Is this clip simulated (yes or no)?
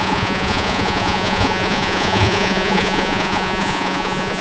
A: yes